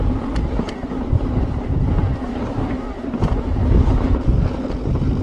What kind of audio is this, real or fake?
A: fake